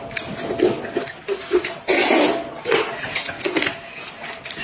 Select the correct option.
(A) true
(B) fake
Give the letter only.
A